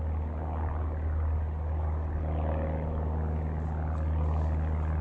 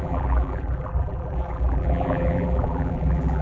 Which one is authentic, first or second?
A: first